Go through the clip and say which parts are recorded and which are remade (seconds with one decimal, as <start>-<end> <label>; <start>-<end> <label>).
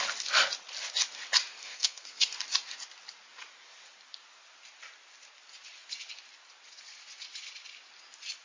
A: 0.0-1.6 recorded; 1.6-2.3 remade; 2.3-8.4 recorded